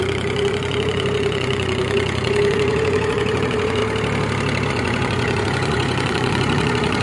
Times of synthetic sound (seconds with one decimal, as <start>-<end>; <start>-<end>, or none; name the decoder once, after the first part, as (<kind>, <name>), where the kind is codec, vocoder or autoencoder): 0.0-3.8 (vocoder, Vocos); 4.7-7.0